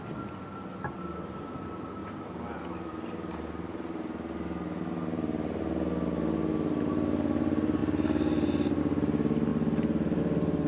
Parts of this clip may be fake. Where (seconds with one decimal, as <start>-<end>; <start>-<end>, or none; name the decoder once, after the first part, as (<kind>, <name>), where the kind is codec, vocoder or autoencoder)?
none